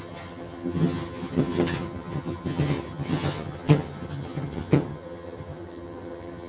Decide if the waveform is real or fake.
fake